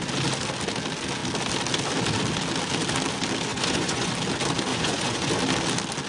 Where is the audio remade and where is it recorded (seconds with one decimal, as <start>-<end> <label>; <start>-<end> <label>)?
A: 0.0-3.5 recorded; 3.5-4.1 remade; 4.1-4.7 recorded; 4.7-5.3 remade; 5.3-6.1 recorded